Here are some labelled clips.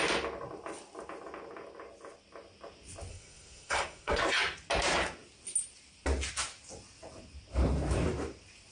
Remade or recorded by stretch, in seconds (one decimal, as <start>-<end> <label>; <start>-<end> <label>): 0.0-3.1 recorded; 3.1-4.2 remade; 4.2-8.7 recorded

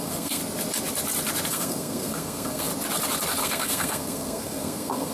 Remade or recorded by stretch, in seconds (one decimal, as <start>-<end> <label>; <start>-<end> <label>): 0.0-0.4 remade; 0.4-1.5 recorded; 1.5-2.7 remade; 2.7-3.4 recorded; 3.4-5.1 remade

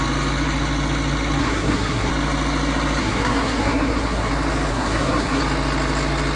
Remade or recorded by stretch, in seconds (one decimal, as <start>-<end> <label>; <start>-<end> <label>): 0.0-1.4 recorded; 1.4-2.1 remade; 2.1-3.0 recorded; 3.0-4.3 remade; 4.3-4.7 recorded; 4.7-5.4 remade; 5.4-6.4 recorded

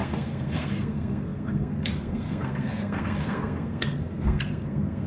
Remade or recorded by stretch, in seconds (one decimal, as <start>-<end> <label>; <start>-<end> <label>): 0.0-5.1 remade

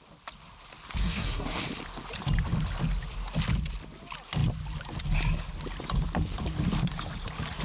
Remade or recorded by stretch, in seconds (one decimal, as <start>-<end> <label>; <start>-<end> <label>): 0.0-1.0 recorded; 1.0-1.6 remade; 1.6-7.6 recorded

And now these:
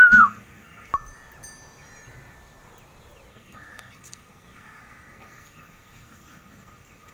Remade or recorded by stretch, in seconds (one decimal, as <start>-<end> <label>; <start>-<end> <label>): 0.0-0.9 remade; 0.9-3.3 recorded; 3.3-7.1 remade

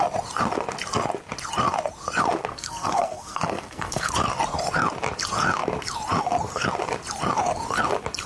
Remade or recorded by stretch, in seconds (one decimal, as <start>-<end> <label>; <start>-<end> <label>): 0.0-2.5 recorded; 2.5-4.1 remade; 4.1-8.3 recorded